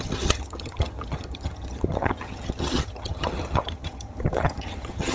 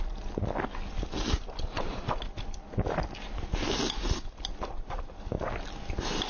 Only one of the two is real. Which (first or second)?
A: second